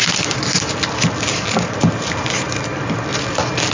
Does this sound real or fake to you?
real